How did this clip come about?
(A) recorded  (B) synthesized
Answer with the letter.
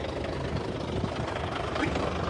A